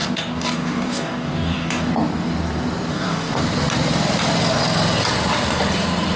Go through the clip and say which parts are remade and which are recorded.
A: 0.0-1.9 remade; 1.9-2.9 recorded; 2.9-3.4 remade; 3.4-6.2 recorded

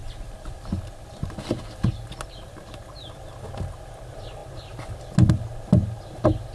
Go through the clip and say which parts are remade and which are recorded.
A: 0.0-6.5 recorded

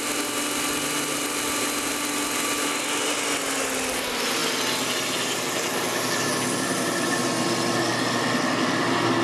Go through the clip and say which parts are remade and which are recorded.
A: 0.0-9.2 recorded

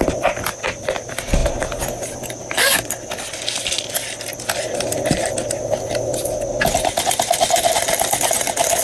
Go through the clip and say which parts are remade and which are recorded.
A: 0.0-8.8 recorded

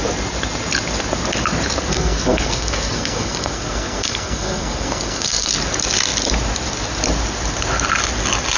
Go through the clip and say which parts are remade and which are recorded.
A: 0.0-1.9 recorded; 1.9-5.5 remade; 5.5-8.6 recorded

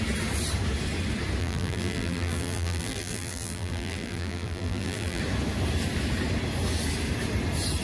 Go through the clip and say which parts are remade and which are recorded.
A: 0.0-1.4 recorded; 1.4-5.2 remade; 5.2-7.8 recorded

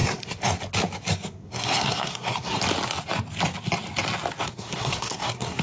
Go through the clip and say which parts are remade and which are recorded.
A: 0.0-0.6 remade; 0.6-1.1 recorded; 1.1-2.6 remade; 2.6-4.5 recorded; 4.5-5.6 remade

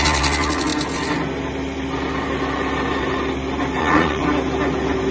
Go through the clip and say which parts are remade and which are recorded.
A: 0.0-0.7 remade; 0.7-3.8 recorded; 3.8-4.2 remade; 4.2-5.1 recorded